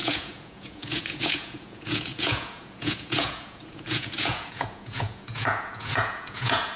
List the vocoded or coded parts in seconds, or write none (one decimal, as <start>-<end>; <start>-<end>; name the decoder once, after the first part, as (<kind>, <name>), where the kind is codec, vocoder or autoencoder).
0.0-6.8 (vocoder, Vocos)